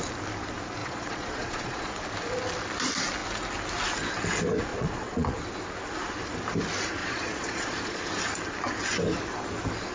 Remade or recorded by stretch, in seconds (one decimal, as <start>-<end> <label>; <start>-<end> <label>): 0.0-0.8 recorded; 0.8-1.9 remade; 1.9-4.7 recorded; 4.7-5.4 remade; 5.4-7.0 recorded; 7.0-8.1 remade; 8.1-9.9 recorded